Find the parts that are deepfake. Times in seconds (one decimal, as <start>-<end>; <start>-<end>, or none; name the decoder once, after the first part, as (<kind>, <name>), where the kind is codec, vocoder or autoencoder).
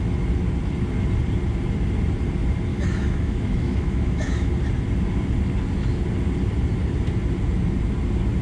2.7-4.5 (autoencoder, DAC-VAE)